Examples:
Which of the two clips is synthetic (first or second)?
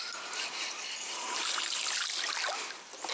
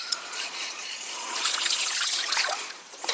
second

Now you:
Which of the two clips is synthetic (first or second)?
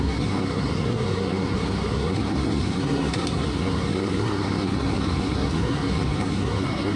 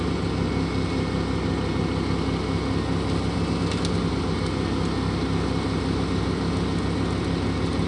first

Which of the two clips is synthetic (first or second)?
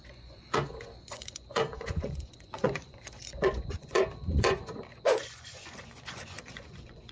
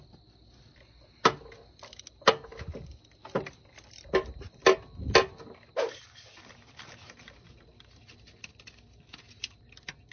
first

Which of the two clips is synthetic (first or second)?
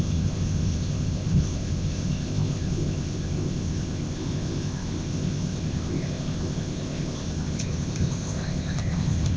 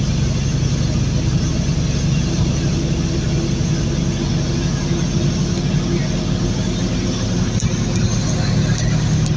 first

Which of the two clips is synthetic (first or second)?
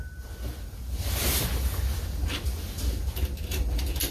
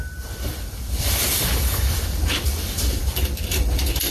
second